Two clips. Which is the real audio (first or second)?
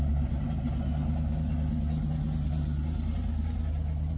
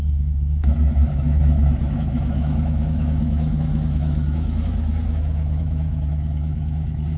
first